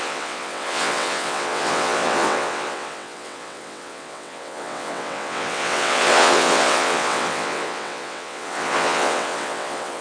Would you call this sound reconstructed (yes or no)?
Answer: yes